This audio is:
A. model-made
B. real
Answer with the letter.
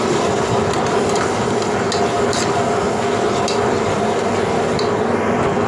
B